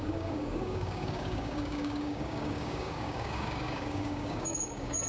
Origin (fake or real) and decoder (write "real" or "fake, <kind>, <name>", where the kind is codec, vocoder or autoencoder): fake, codec, DAC